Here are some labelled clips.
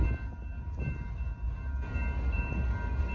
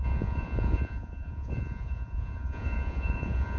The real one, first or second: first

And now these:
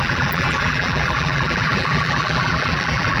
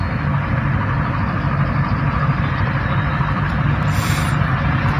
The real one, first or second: second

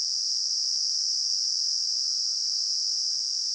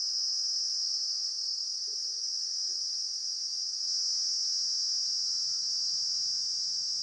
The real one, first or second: second